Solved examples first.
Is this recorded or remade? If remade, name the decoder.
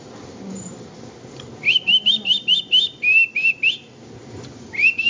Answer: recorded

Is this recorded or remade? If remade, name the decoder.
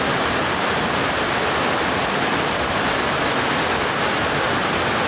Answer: recorded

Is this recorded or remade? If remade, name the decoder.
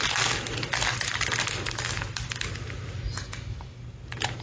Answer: recorded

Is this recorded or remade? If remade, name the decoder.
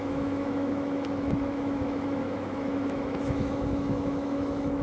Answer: remade, autoencoder, DAC-VAE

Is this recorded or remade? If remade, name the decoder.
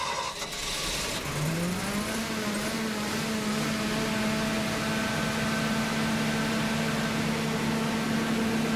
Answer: recorded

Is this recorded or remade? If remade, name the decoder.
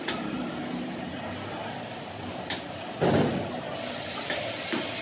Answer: recorded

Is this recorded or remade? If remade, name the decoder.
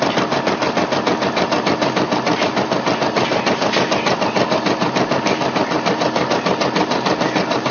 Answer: recorded